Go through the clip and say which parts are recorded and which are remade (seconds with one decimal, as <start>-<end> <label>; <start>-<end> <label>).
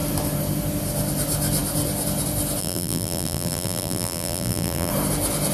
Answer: 0.0-2.6 recorded; 2.6-4.9 remade; 4.9-5.5 recorded